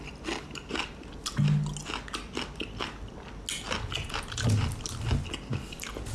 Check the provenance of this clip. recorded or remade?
recorded